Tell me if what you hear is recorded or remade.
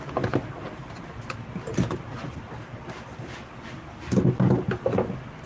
recorded